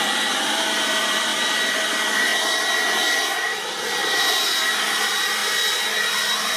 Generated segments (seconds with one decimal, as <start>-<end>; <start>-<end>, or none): 0.0-2.3; 3.0-4.0; 5.0-5.4; 6.0-6.6